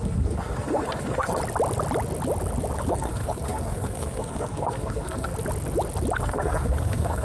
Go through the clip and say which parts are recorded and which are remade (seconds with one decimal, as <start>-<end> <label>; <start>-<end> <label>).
0.0-1.4 remade; 1.4-2.9 recorded; 2.9-5.3 remade; 5.3-6.2 recorded; 6.2-7.2 remade